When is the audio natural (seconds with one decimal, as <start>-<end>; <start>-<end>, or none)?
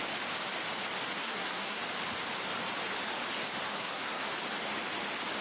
0.0-1.2; 1.8-3.7; 4.3-5.4